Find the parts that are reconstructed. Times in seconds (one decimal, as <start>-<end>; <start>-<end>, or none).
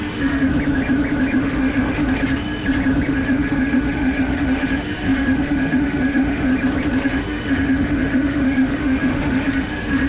0.0-0.5; 1.4-2.0; 3.1-6.5; 7.0-10.1